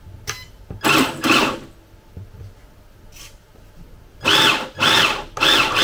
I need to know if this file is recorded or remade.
recorded